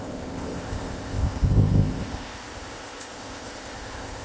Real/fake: fake